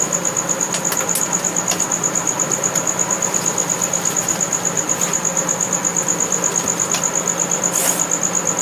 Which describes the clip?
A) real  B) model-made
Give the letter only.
A